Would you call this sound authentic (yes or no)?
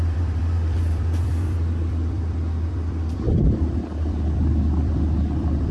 no